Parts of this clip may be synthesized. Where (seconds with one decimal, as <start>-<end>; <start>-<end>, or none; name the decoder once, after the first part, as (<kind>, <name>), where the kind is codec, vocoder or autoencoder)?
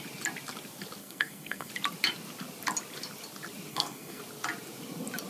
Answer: 1.0-1.7 (codec, SNAC); 3.7-4.2